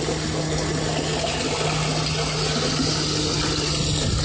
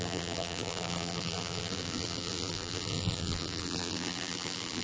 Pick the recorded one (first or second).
first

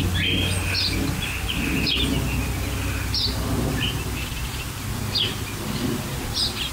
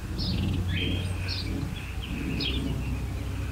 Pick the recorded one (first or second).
first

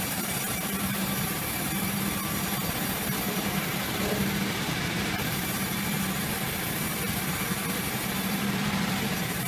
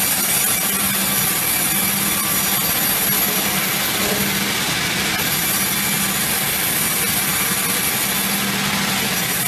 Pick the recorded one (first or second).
second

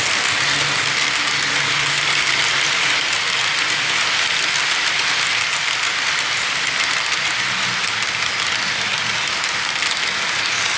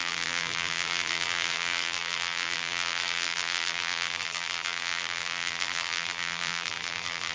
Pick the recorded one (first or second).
first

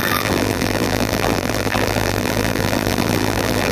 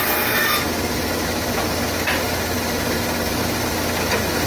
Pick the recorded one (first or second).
second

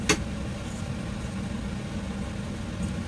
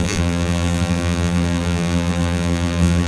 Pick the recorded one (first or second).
first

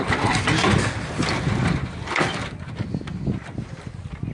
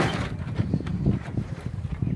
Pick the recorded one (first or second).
first